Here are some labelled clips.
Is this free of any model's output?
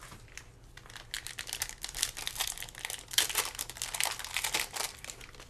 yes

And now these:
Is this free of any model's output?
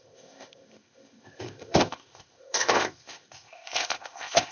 no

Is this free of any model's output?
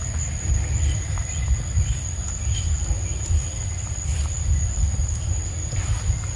yes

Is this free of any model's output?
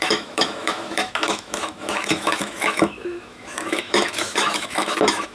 no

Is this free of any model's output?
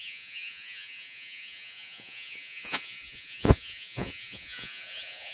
no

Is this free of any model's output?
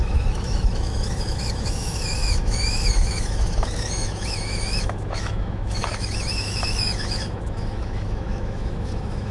no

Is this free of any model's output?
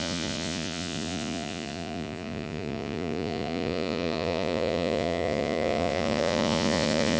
no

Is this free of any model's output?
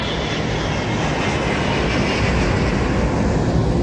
yes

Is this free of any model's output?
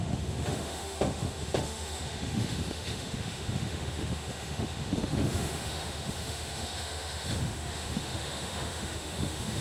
no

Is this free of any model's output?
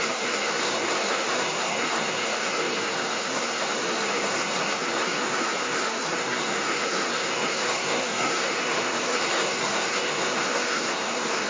no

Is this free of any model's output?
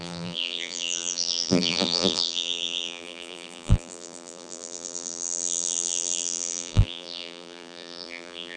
no